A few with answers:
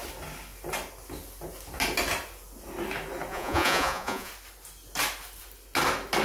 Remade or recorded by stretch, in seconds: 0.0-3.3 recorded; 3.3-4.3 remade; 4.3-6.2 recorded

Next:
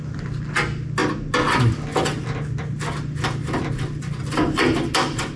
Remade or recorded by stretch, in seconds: 0.0-5.4 recorded

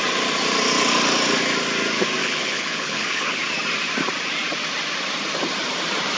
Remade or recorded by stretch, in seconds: 0.0-2.2 recorded; 2.2-3.4 remade; 3.4-6.2 recorded

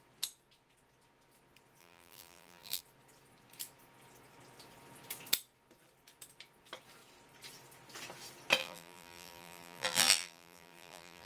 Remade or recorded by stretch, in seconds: 0.0-1.8 recorded; 1.8-2.8 remade; 2.8-8.6 recorded; 8.6-11.3 remade

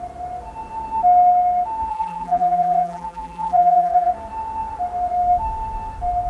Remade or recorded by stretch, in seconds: 0.0-1.9 recorded; 1.9-4.1 remade; 4.1-6.3 recorded

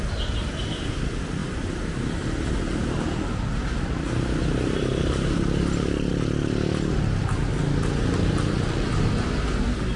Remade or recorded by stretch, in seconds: 0.0-10.0 recorded

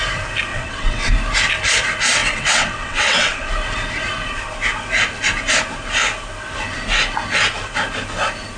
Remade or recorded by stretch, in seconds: 0.0-0.5 recorded; 0.5-1.1 remade; 1.1-2.2 recorded; 2.2-3.5 remade; 3.5-8.6 recorded

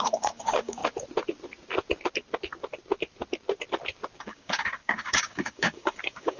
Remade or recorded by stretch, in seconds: 0.0-0.8 remade; 0.8-4.2 recorded; 4.2-6.4 remade